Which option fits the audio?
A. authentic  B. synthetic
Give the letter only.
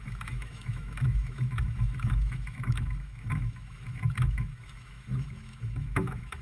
B